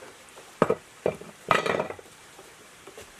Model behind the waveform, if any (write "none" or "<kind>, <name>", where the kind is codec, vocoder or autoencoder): vocoder, BigVGAN v2